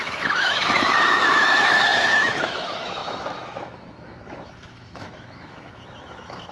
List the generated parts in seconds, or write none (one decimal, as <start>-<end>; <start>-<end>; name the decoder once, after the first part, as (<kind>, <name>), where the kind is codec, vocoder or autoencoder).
0.0-6.5 (autoencoder, DAC-VAE)